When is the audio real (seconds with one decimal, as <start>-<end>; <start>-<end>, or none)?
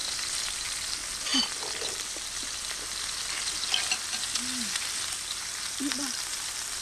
0.9-6.8